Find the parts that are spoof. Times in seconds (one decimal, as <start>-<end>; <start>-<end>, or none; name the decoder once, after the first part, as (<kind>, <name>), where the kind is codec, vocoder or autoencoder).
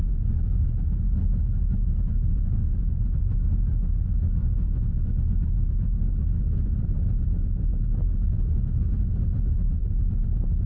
none